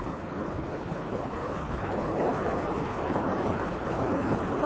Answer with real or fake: fake